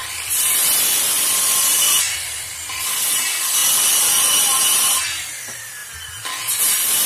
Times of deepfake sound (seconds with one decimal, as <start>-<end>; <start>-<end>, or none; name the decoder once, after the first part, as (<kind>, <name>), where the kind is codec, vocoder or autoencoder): none